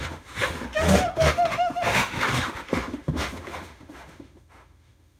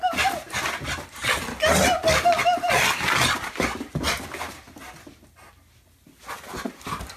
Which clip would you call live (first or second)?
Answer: second